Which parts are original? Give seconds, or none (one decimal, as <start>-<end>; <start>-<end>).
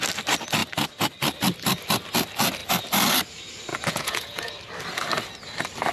0.0-3.7; 4.5-5.9